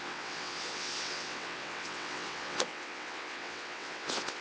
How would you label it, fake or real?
fake